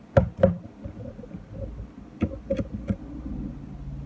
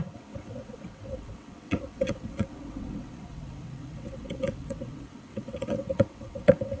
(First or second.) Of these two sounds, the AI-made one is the second